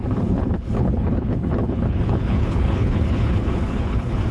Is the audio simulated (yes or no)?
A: yes